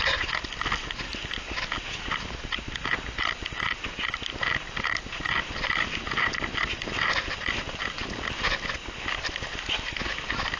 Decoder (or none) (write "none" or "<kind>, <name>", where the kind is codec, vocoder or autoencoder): none